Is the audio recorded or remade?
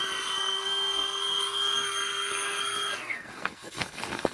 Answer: remade